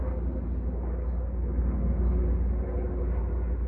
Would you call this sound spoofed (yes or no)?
no